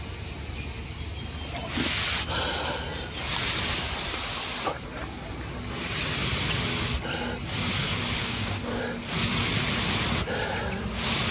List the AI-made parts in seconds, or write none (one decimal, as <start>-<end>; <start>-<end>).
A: 8.2-8.8